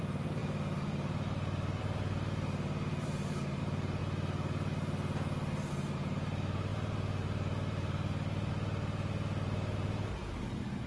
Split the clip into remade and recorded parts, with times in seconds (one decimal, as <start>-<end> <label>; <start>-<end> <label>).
0.0-4.0 remade; 4.0-5.7 recorded; 5.7-10.9 remade